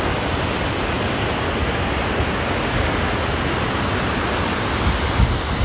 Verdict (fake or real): real